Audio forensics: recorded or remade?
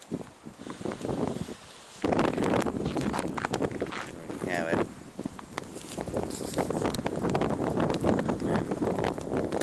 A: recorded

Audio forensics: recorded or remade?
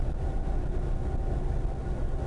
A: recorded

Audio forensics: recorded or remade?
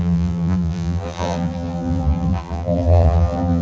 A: remade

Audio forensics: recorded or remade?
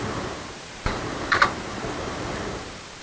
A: remade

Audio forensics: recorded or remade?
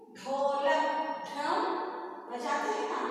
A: recorded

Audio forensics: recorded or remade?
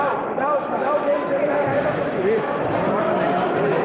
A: remade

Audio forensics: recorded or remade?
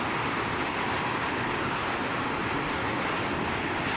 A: recorded